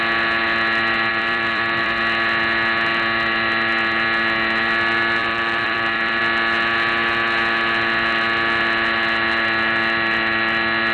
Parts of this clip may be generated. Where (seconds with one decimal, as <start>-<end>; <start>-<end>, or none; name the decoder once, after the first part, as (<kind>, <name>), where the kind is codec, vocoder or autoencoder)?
1.1-2.0 (vocoder, BigVGAN v2); 5.2-6.2